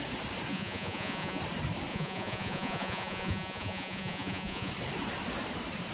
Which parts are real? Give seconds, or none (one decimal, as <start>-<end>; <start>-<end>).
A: 0.0-0.5; 1.4-1.9; 4.7-5.9